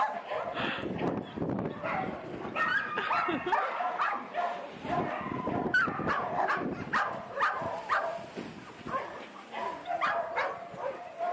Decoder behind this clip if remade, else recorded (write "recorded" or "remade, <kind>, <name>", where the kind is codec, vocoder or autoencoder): recorded